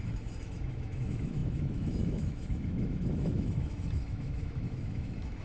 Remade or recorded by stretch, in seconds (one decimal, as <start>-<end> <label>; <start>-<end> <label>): 0.0-5.4 remade